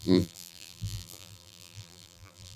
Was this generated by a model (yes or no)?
yes